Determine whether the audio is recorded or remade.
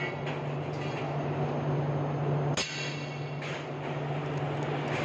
recorded